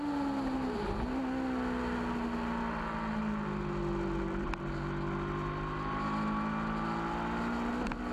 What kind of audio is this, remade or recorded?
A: recorded